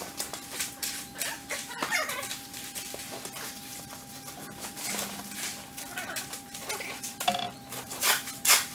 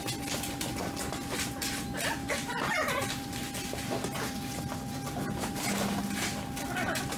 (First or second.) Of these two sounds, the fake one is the first